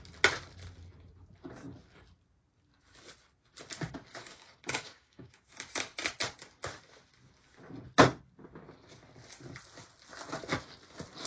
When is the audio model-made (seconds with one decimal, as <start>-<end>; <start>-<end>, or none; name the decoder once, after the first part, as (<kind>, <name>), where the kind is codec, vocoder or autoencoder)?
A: 4.2-5.4 (codec, DAC)